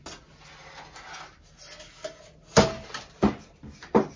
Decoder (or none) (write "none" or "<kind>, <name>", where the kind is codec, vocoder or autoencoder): none